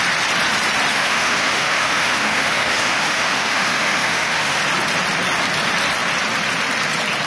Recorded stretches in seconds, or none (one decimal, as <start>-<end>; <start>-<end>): 0.0-0.9; 4.6-7.3